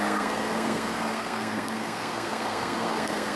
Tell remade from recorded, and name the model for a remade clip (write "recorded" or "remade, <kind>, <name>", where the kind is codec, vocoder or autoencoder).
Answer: remade, codec, SNAC